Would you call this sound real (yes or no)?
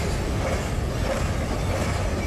yes